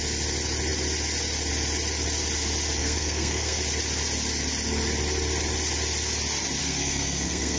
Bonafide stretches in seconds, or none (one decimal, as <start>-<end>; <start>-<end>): 0.0-2.8; 3.6-6.6